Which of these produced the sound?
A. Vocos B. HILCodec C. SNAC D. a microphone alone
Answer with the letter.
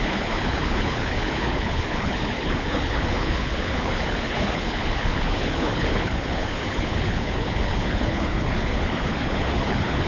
B